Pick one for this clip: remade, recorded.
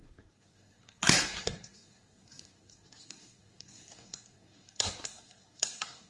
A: remade